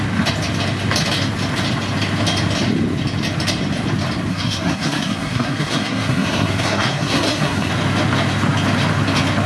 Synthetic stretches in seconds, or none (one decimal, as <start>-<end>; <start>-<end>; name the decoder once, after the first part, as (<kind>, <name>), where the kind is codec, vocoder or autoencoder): 4.3-7.7 (codec, SNAC)